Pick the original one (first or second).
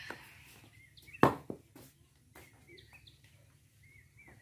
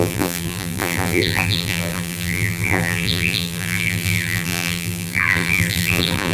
first